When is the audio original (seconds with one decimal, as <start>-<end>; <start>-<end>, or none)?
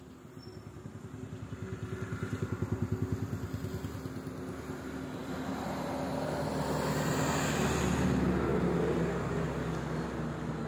0.0-5.2; 6.5-10.7